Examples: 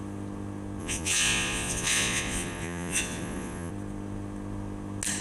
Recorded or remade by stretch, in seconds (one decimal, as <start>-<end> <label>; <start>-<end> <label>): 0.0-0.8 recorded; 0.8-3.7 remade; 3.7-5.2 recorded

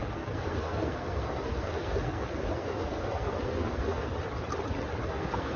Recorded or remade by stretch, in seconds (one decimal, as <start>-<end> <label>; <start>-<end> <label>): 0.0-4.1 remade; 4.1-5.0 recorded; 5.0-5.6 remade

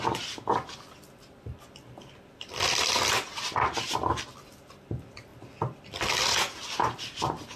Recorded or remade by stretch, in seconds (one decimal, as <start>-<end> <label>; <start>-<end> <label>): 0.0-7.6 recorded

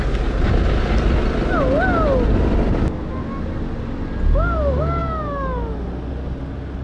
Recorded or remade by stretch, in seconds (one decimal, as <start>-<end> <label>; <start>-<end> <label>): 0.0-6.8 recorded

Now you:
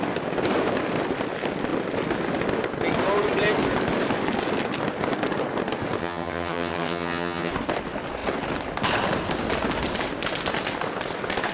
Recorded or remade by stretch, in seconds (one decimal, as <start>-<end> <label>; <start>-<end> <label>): 0.0-6.0 recorded; 6.0-7.5 remade; 7.5-11.5 recorded